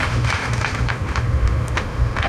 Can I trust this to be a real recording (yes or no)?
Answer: no